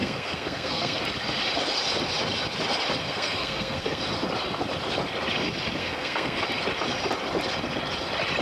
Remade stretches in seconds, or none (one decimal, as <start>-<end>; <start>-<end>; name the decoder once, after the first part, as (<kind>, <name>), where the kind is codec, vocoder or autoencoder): 0.0-1.0 (codec, SNAC); 3.0-4.0; 5.8-6.4